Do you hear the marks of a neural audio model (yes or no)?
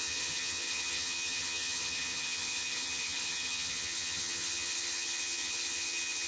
yes